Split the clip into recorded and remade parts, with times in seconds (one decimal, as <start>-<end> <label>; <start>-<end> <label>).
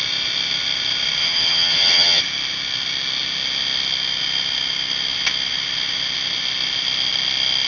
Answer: 0.0-1.2 recorded; 1.2-2.2 remade; 2.2-7.7 recorded